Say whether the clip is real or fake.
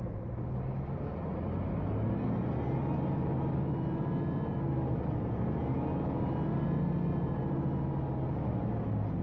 real